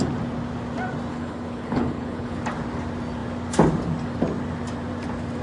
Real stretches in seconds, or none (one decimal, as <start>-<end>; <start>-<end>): 0.0-1.1; 2.4-5.4